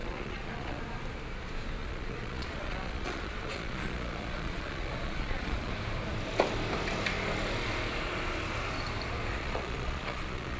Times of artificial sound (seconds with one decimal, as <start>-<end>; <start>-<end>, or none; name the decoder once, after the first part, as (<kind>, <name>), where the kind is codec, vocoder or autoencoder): 0.0-0.8 (vocoder, Vocos); 1.8-5.7; 9.3-10.6